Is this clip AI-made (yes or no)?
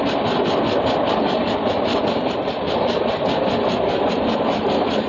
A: no